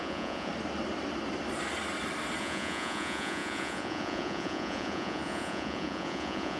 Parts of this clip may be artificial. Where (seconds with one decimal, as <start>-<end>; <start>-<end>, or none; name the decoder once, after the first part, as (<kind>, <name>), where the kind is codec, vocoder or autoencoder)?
0.0-0.5 (vocoder, Vocos); 2.4-6.6